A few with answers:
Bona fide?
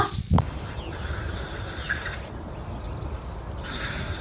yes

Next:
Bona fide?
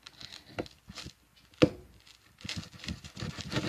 yes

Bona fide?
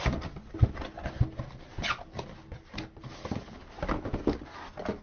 yes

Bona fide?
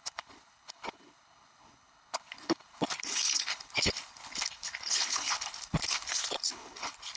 no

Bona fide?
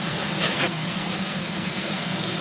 no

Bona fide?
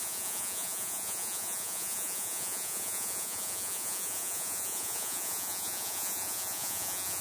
no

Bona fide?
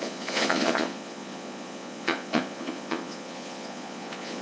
no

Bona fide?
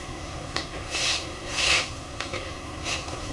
no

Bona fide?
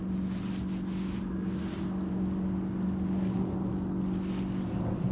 yes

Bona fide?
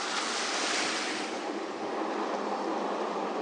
yes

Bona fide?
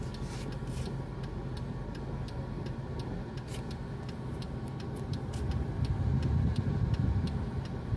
yes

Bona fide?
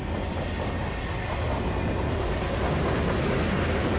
yes